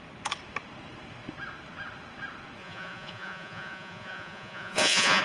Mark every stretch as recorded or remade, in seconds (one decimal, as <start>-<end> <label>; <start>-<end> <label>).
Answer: 0.0-2.6 recorded; 2.6-5.2 remade